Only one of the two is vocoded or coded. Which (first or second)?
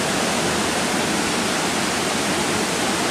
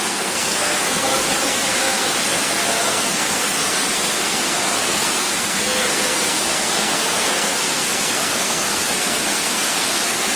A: second